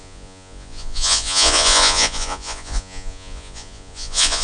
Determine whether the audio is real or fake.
fake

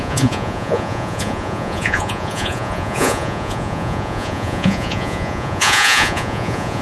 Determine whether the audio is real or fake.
fake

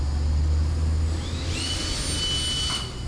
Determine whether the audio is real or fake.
real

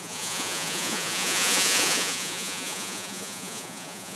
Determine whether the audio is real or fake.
fake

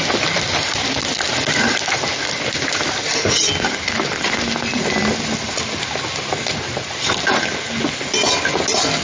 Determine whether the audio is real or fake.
real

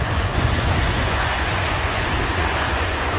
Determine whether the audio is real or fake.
fake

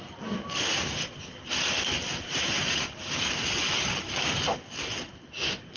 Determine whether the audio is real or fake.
real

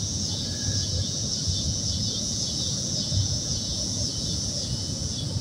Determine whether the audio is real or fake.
fake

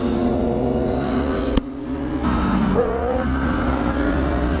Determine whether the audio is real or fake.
fake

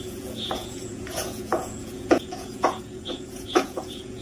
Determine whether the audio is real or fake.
fake